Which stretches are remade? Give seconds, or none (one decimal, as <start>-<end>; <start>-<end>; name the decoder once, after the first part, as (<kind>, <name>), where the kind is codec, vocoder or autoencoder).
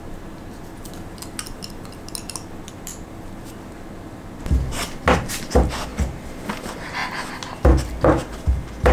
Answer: none